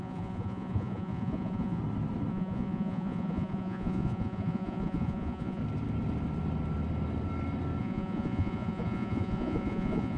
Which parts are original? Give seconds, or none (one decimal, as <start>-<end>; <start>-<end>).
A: 1.8-2.3; 5.6-7.8